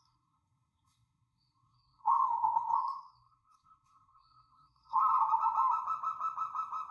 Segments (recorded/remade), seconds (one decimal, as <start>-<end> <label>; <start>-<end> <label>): 0.0-5.1 remade; 5.1-6.9 recorded